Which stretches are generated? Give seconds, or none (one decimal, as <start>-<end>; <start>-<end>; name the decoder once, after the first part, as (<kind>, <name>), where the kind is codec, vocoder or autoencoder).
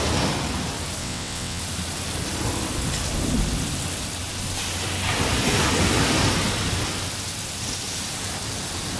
1.0-1.6 (vocoder, WaveNeXt)